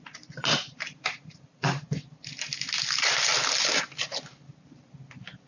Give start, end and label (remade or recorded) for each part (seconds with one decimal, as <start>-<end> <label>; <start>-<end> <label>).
0.0-0.4 recorded; 0.4-2.0 remade; 2.0-5.5 recorded